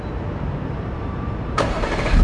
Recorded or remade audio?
remade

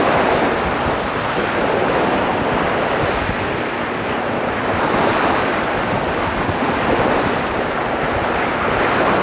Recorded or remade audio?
recorded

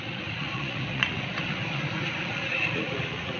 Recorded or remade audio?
remade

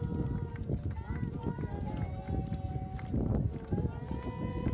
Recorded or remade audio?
recorded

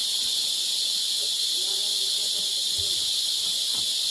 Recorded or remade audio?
remade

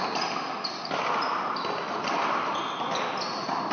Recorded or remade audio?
recorded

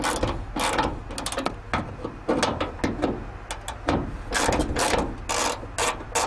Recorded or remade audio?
recorded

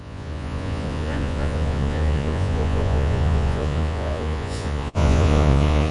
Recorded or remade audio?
remade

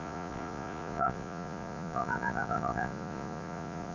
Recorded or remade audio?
remade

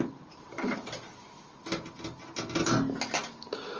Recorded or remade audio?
recorded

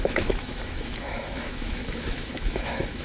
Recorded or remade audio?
remade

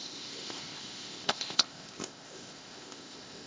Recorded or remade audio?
remade